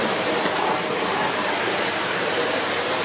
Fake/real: fake